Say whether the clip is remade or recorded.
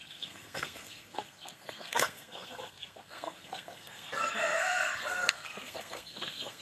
remade